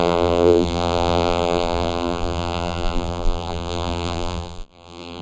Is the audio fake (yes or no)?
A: yes